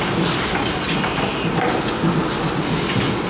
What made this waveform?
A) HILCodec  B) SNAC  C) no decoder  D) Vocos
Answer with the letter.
C